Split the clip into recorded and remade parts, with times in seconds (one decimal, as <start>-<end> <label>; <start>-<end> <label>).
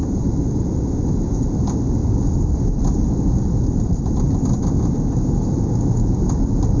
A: 0.0-1.2 remade; 1.2-2.0 recorded; 2.0-4.7 remade; 4.7-6.8 recorded